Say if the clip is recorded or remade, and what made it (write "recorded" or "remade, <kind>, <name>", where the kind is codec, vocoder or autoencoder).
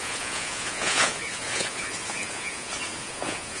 remade, vocoder, Vocos